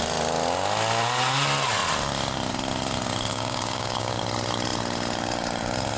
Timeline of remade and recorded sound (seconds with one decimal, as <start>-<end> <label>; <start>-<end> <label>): 0.0-3.3 recorded; 3.3-4.2 remade; 4.2-6.0 recorded

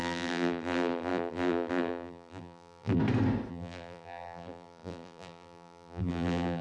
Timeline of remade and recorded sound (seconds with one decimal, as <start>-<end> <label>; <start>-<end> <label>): 0.0-3.0 remade; 3.0-3.5 recorded; 3.5-6.6 remade

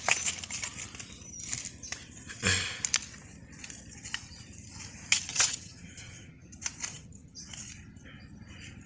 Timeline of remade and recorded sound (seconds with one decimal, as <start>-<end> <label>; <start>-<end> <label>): 0.0-5.3 recorded; 5.3-6.5 remade; 6.5-6.9 recorded; 6.9-7.4 remade; 7.4-8.9 recorded

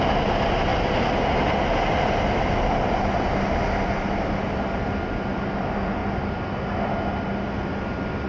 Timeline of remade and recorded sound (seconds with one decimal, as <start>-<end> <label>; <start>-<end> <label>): 0.0-8.3 recorded

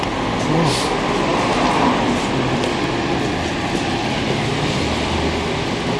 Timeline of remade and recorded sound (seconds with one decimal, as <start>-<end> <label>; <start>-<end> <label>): 0.0-6.0 recorded